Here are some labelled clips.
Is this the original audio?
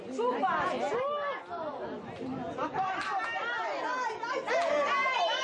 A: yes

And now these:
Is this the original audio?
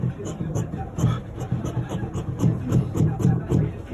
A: no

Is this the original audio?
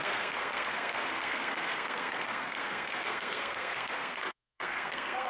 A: no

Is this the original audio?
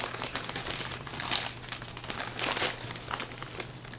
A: yes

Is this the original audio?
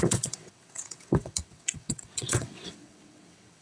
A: no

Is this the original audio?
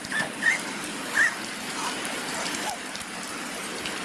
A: no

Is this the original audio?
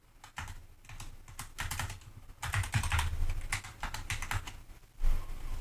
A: yes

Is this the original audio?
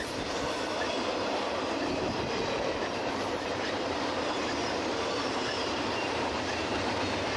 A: no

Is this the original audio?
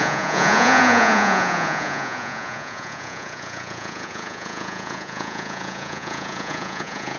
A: no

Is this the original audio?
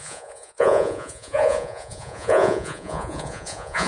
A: no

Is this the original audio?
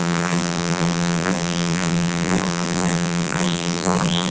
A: no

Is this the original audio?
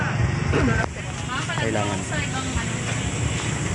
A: yes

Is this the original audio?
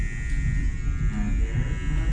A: yes